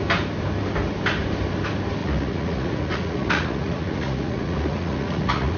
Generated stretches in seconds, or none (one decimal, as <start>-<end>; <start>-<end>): 2.0-5.6